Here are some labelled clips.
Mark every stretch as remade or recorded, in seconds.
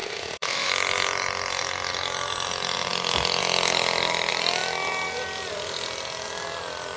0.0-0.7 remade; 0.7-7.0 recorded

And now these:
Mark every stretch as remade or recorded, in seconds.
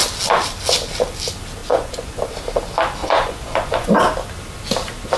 0.0-1.6 recorded; 1.6-2.2 remade; 2.2-3.0 recorded; 3.0-3.9 remade; 3.9-5.2 recorded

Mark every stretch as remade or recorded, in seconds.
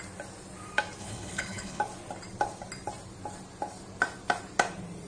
0.0-1.0 recorded; 1.0-1.8 remade; 1.8-5.1 recorded